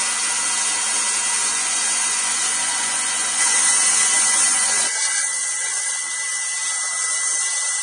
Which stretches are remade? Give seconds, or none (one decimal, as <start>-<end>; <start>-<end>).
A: 1.4-6.1